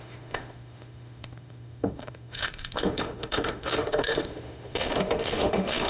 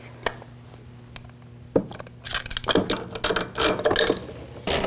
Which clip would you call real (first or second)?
second